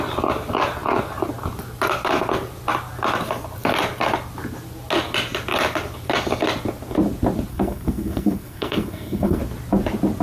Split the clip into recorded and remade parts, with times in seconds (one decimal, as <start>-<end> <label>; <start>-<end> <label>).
0.0-7.5 recorded; 7.5-9.4 remade; 9.4-10.2 recorded